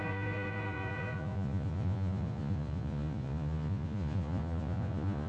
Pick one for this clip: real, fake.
fake